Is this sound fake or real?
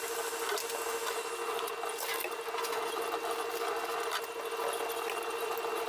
real